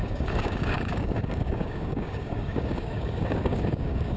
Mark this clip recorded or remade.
remade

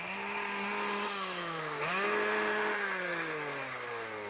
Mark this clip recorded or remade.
remade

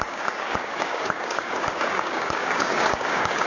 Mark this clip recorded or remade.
remade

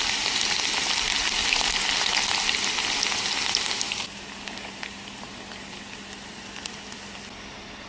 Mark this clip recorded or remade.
recorded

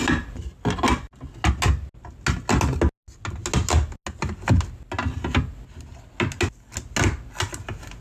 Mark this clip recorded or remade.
recorded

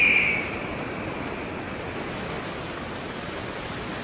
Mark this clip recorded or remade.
recorded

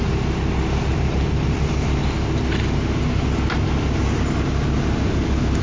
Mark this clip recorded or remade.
recorded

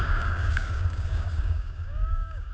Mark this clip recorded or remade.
remade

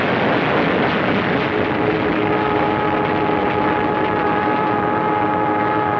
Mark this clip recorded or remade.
recorded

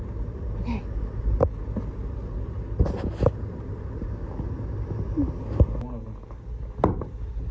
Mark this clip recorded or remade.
recorded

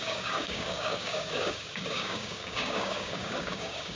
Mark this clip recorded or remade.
remade